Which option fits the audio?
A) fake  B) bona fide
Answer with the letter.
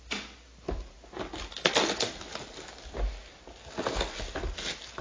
B